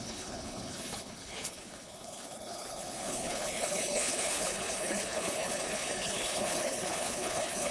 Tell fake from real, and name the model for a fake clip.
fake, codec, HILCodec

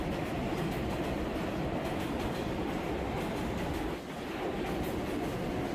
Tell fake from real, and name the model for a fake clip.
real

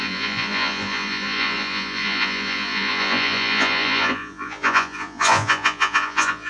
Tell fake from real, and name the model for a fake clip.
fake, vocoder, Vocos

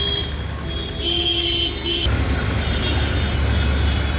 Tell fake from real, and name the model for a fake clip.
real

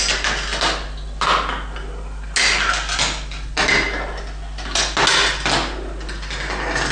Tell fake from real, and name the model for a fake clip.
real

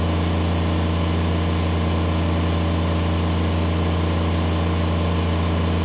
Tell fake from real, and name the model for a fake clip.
real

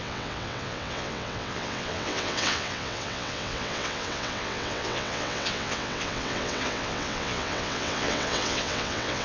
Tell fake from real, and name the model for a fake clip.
fake, vocoder, WaveNeXt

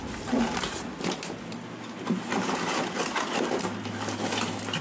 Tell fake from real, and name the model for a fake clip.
real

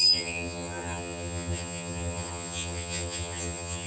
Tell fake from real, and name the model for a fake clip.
fake, vocoder, HiFi-GAN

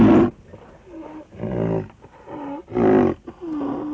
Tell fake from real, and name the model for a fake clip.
real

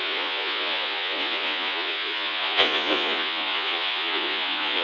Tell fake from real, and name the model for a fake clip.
fake, vocoder, Vocos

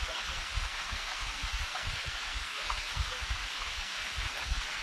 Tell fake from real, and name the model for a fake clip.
fake, codec, SNAC